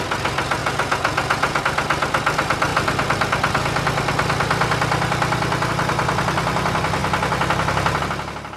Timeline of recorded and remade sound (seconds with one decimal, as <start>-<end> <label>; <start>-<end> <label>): 0.0-0.6 recorded; 0.6-1.6 remade; 1.6-8.6 recorded